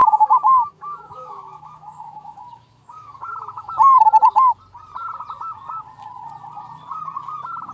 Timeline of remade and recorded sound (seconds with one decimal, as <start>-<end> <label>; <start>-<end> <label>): 0.0-3.7 remade; 3.7-7.7 recorded